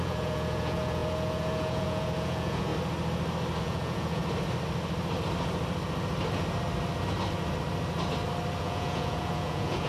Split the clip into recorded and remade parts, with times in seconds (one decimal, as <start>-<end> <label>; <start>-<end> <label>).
0.0-2.7 remade; 2.7-3.6 recorded; 3.6-4.2 remade; 4.2-8.6 recorded; 8.6-9.9 remade